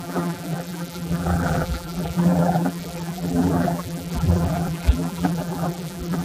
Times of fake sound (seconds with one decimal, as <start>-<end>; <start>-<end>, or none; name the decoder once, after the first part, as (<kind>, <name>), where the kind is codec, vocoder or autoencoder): 0.0-6.2 (vocoder, BigVGAN v2)